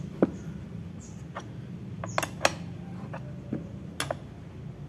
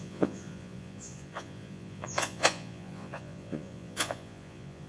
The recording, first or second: first